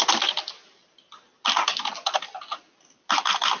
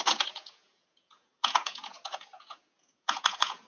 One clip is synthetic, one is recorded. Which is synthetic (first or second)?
second